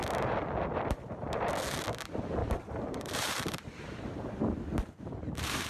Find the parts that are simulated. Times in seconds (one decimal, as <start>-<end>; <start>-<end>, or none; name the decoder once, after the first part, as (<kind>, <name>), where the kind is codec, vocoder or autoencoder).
2.4-5.7 (vocoder, BigVGAN v2)